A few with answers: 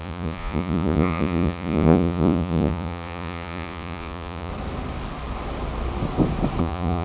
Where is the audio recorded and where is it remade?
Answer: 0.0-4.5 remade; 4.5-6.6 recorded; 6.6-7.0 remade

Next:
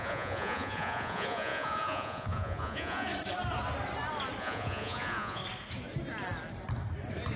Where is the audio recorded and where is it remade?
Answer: 0.0-3.1 remade; 3.1-4.4 recorded; 4.4-5.4 remade; 5.4-7.4 recorded

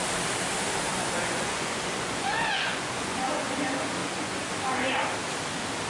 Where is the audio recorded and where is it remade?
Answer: 0.0-0.9 recorded; 0.9-3.5 remade; 3.5-4.0 recorded; 4.0-4.5 remade; 4.5-5.9 recorded

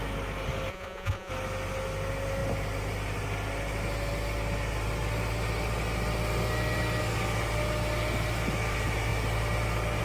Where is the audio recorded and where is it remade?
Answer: 0.0-0.7 recorded; 0.7-1.3 remade; 1.3-10.0 recorded

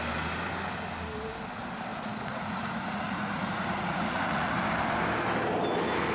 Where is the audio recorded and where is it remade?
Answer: 0.0-1.9 recorded; 1.9-4.5 remade; 4.5-6.1 recorded

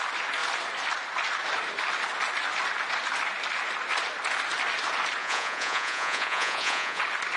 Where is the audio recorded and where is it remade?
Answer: 0.0-5.2 recorded; 5.2-7.0 remade; 7.0-7.4 recorded